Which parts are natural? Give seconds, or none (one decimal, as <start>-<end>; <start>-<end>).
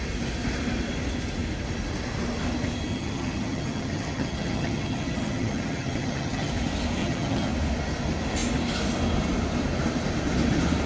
0.0-2.9; 6.5-7.0; 7.5-10.9